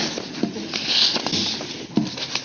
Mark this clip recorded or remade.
recorded